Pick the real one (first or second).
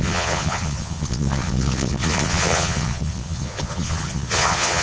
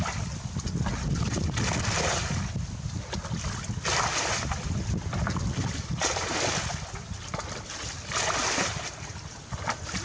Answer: second